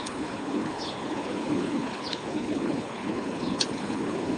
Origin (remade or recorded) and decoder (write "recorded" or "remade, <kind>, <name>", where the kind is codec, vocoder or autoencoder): remade, codec, HILCodec